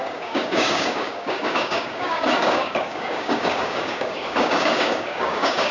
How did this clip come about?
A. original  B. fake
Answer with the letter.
B